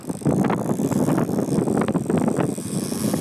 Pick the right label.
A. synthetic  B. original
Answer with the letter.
A